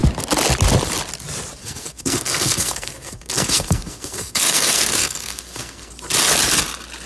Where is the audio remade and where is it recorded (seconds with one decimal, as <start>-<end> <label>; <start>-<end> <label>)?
0.0-1.6 recorded; 1.6-5.9 remade; 5.9-7.1 recorded